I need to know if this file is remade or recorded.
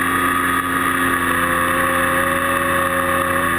recorded